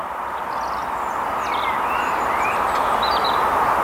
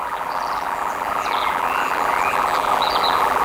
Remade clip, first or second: second